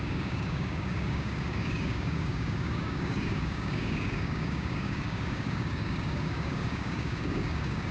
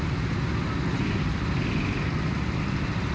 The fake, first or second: first